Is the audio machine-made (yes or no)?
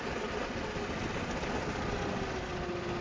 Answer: no